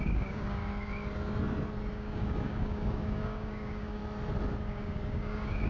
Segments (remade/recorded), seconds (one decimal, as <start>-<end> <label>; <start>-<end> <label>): 0.0-0.6 remade; 0.6-1.9 recorded; 1.9-4.0 remade; 4.0-4.6 recorded; 4.6-5.7 remade